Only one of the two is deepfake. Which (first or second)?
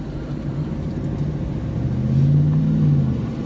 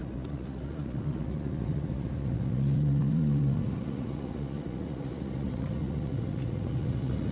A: second